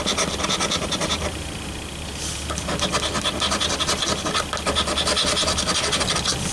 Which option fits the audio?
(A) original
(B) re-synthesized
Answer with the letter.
A